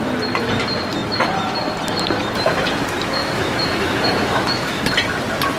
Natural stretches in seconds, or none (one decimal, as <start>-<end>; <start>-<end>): 0.0-3.2; 4.8-5.6